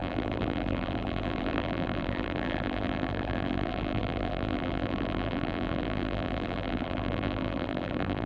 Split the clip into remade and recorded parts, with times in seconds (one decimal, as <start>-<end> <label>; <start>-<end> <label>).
0.0-8.3 remade